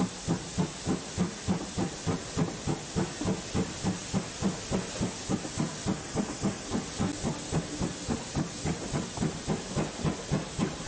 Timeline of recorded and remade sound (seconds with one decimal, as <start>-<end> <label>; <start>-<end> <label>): 0.0-10.9 recorded

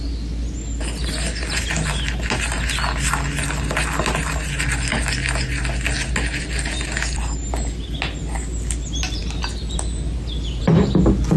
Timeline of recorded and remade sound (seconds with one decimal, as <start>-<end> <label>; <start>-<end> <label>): 0.0-11.4 recorded

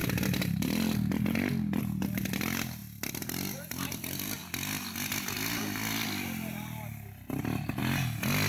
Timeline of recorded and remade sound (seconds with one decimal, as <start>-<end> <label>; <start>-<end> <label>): 0.0-8.5 recorded

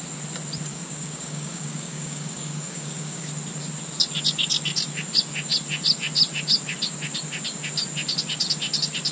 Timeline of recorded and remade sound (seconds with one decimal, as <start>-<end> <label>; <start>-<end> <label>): 0.0-0.7 recorded; 0.7-3.3 remade; 3.3-9.1 recorded

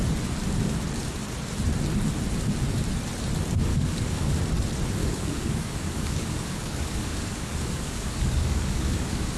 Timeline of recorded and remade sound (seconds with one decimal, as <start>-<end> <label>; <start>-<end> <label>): 0.0-3.7 recorded; 3.7-4.4 remade; 4.4-5.0 recorded; 5.0-9.4 remade

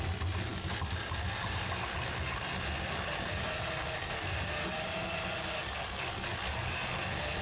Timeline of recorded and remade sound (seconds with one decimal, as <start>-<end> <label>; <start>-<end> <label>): 0.0-7.4 recorded

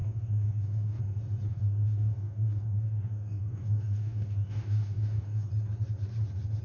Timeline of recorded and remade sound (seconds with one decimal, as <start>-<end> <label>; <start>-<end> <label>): 0.0-1.0 remade; 1.0-1.5 recorded; 1.5-5.5 remade; 5.5-6.6 recorded